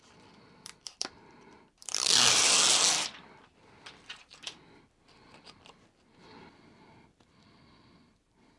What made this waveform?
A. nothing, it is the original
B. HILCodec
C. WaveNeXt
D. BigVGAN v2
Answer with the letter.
D